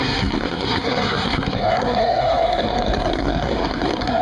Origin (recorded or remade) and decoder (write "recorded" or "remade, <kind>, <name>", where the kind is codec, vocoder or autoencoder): remade, codec, SNAC